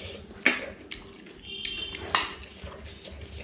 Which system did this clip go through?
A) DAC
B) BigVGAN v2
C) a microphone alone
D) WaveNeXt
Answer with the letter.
C